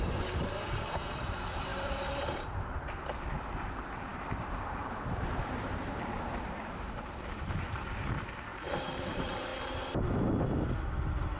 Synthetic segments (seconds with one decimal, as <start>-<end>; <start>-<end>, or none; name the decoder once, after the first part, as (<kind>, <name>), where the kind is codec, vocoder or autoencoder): 0.0-8.5 (vocoder, BigVGAN v2); 9.1-9.5